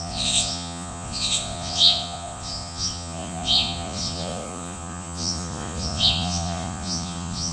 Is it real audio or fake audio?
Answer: fake